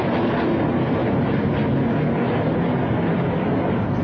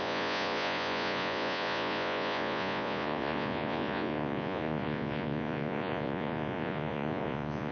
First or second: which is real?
first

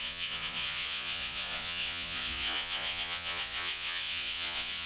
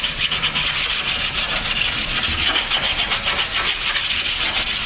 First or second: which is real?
second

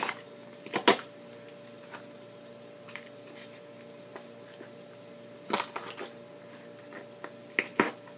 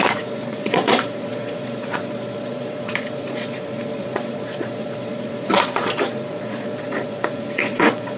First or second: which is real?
first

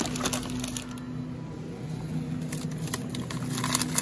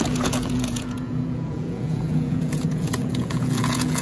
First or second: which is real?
first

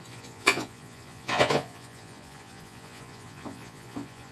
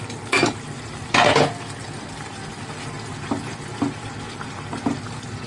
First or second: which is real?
second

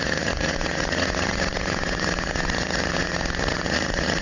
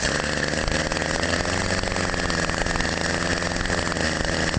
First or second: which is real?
second